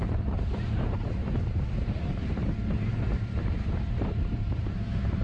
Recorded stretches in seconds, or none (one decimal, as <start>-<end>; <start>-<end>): 1.2-1.7; 2.4-2.9